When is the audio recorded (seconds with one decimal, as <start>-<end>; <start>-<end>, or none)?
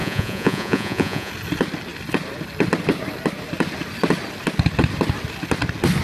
1.3-6.0